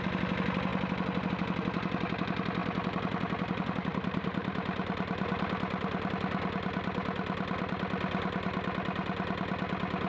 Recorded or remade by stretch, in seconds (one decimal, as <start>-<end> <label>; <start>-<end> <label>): 0.0-2.6 recorded; 2.6-6.1 remade; 6.1-10.1 recorded